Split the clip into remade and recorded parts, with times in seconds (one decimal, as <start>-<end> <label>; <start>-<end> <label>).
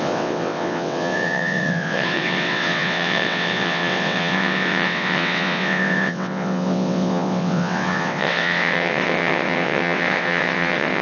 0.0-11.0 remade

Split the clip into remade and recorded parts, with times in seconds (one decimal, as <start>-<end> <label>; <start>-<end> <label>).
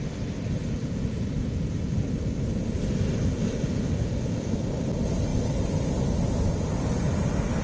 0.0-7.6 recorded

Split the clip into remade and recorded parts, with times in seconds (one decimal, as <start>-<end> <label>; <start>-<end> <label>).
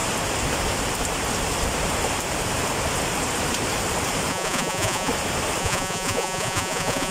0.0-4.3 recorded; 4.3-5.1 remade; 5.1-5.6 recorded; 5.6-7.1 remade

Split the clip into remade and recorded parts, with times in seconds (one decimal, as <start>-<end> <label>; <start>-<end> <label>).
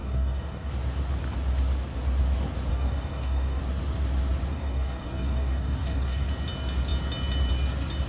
0.0-0.7 remade; 0.7-2.7 recorded; 2.7-3.6 remade; 3.6-4.5 recorded; 4.5-6.3 remade; 6.3-8.1 recorded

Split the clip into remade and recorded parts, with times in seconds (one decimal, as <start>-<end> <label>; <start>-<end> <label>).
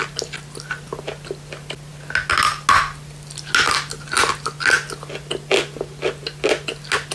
0.0-7.1 recorded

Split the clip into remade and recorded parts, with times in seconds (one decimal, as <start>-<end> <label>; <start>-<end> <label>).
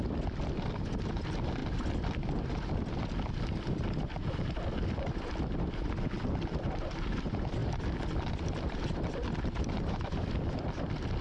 0.0-1.6 remade; 1.6-4.3 recorded; 4.3-7.6 remade; 7.6-9.6 recorded; 9.6-11.2 remade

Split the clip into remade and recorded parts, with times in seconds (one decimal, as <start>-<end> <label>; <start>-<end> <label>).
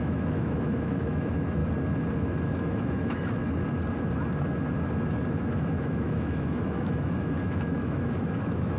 0.0-1.6 remade; 1.6-2.5 recorded; 2.5-3.4 remade; 3.4-5.3 recorded; 5.3-8.8 remade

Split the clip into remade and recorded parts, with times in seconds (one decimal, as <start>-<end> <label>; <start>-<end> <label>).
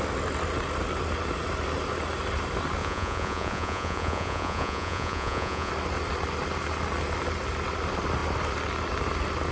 0.0-2.8 recorded; 2.8-5.7 remade; 5.7-9.5 recorded